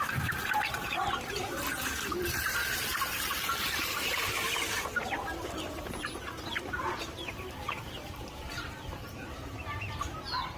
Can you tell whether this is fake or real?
fake